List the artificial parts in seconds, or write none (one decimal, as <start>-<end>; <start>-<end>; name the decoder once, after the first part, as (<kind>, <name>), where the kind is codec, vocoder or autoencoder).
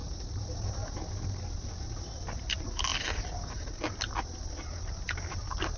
none